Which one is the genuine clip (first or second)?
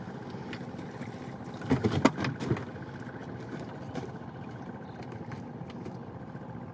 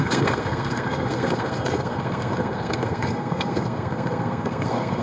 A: first